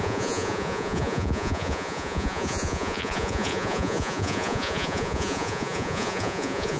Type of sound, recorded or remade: remade